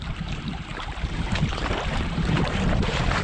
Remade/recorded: remade